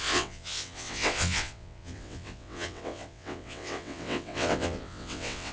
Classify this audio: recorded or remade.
remade